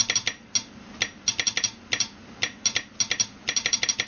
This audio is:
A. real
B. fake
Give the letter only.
A